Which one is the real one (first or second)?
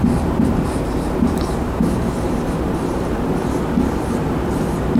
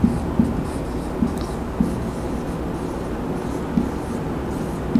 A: second